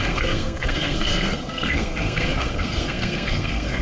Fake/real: fake